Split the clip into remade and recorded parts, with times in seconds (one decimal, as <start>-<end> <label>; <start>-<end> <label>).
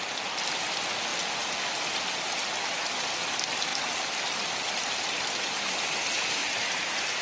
0.0-6.4 recorded; 6.4-7.2 remade